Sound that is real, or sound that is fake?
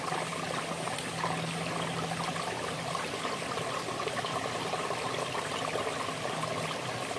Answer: real